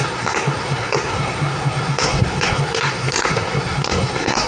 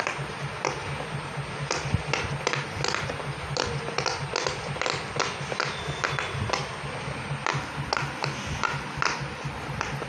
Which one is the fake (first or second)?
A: first